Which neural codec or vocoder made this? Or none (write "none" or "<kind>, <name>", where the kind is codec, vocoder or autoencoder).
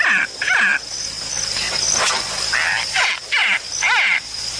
none